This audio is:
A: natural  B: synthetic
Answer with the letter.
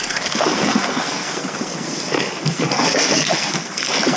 B